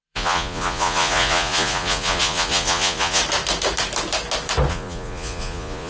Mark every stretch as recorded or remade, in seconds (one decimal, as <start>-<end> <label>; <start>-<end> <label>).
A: 0.0-3.2 remade; 3.2-4.7 recorded; 4.7-5.9 remade